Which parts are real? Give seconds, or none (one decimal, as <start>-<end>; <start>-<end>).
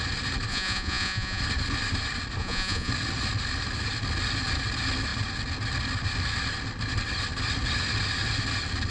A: 0.0-0.5; 1.4-2.4; 2.9-8.9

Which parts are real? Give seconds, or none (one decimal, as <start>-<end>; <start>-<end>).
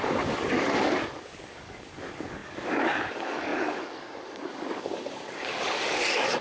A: none